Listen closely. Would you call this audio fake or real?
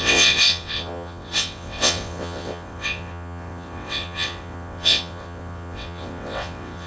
fake